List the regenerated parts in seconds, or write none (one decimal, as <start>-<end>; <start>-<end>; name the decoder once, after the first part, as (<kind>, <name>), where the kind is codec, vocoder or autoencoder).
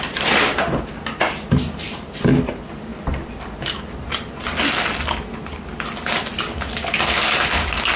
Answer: none